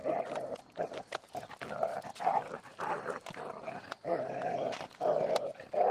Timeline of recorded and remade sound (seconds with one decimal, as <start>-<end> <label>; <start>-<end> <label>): 0.0-1.9 recorded; 1.9-5.4 remade; 5.4-5.9 recorded